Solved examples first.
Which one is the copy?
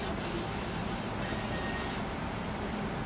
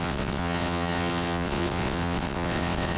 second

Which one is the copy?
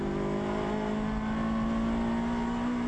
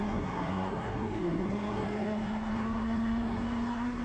second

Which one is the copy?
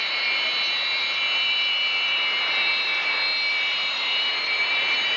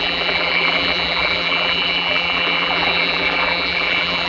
second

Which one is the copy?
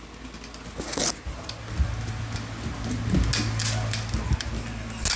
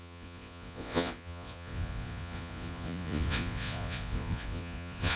second